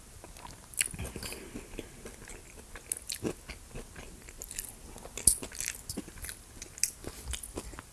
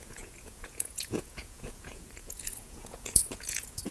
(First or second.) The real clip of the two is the first